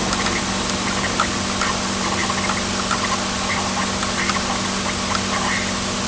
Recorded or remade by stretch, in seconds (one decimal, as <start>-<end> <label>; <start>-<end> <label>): 0.0-6.1 recorded